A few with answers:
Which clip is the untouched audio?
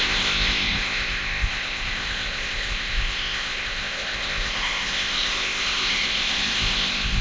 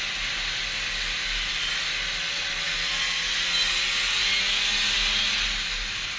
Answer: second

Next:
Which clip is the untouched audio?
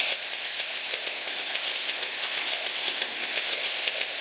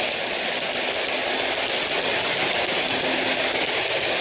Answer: second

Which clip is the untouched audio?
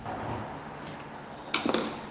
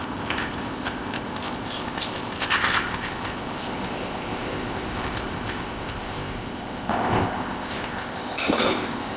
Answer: first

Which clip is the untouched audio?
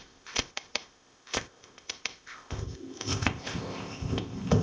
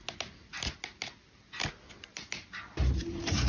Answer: second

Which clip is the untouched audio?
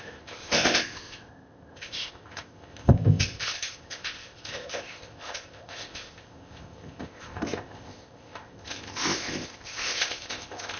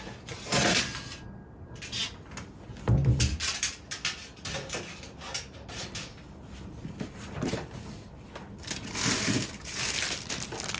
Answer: second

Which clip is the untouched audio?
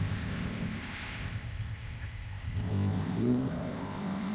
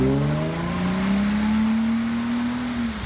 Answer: second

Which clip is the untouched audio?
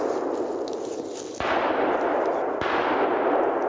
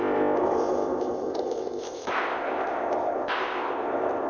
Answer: first